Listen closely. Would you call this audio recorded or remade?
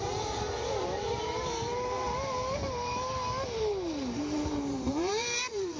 remade